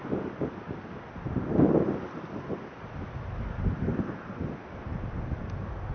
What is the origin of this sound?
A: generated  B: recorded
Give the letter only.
B